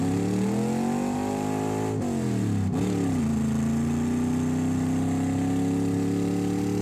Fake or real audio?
real